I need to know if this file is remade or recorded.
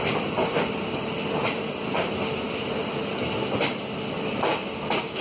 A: recorded